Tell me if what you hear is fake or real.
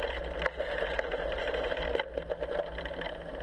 real